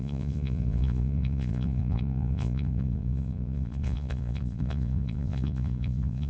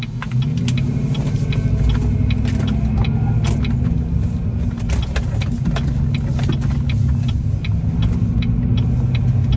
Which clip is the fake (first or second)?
first